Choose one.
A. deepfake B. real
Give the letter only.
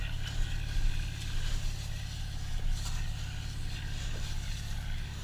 B